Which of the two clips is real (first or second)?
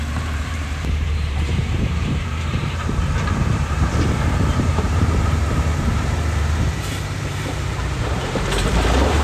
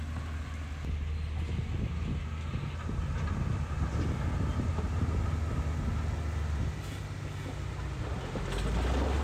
second